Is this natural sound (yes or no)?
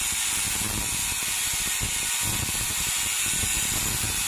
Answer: yes